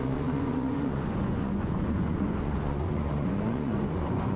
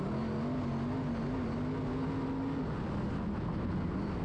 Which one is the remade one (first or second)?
first